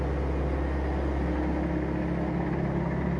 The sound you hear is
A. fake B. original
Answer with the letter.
B